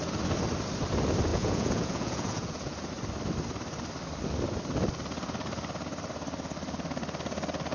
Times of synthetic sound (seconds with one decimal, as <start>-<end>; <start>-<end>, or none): 1.3-2.9